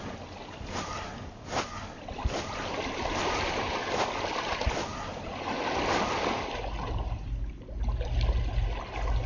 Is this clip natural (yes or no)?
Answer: yes